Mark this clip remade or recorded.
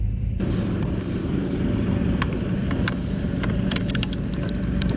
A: remade